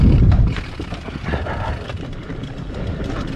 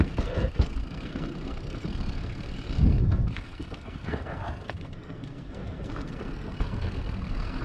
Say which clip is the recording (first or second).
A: first